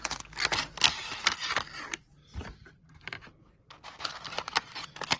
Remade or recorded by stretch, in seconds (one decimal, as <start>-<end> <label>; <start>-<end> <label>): 0.0-1.4 recorded; 1.4-3.1 remade; 3.1-5.2 recorded